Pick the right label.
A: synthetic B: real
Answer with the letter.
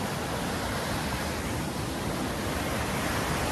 B